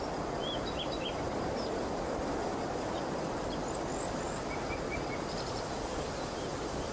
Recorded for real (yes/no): yes